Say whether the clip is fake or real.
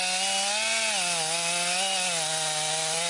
real